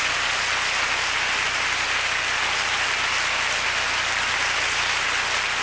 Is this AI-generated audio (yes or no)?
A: no